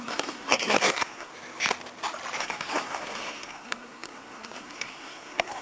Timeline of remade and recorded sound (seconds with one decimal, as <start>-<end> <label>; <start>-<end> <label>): 0.0-1.3 remade; 1.3-2.4 recorded; 2.4-5.6 remade